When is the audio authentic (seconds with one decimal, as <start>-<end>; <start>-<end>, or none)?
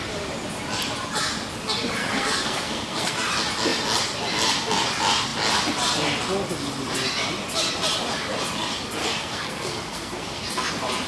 0.0-2.0; 3.3-9.0; 10.7-11.1